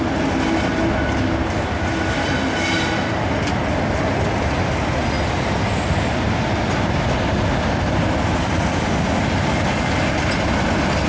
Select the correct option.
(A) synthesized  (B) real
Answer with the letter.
B